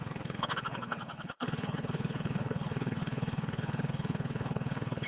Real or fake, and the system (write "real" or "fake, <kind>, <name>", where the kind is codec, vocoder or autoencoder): fake, codec, HILCodec